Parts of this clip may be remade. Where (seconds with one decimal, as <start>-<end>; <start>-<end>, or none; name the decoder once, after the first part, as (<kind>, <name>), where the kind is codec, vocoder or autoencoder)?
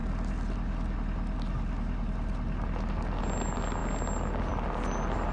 none